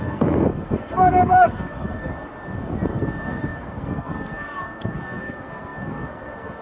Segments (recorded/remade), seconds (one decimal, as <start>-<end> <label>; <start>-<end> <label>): 0.0-2.1 remade; 2.1-2.9 recorded; 2.9-6.6 remade